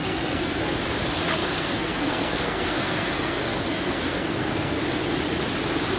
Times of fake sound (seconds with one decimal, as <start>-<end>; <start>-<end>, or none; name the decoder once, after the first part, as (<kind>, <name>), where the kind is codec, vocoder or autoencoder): 0.0-0.6 (codec, SNAC); 1.4-4.8